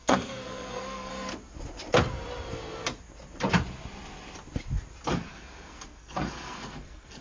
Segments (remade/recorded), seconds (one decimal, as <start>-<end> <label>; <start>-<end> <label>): 0.0-1.1 remade; 1.1-5.1 recorded; 5.1-7.2 remade